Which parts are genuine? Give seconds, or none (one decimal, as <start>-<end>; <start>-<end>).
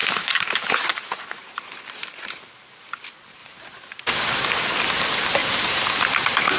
0.5-0.9; 2.8-3.4; 4.1-5.4